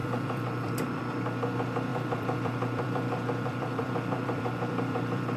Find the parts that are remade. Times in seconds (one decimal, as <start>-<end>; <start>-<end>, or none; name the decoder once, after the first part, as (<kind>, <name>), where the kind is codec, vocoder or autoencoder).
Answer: 0.0-1.0 (vocoder, BigVGAN v2); 1.9-5.4